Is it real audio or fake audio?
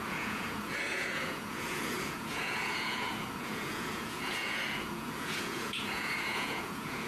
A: fake